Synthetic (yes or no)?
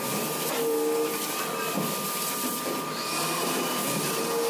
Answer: no